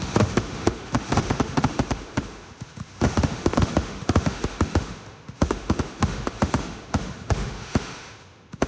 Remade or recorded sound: remade